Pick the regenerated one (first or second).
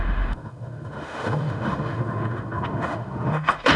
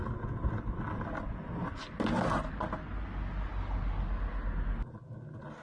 first